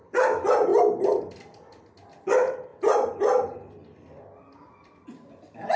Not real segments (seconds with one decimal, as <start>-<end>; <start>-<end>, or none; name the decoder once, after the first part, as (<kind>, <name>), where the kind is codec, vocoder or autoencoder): none